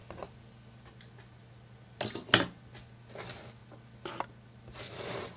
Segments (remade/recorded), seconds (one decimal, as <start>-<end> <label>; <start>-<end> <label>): 0.0-5.4 recorded